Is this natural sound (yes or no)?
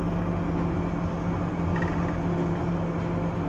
yes